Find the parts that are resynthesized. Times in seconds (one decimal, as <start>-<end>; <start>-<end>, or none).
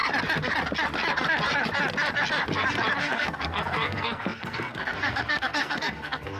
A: 3.0-6.4